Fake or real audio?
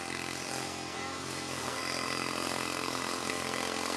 fake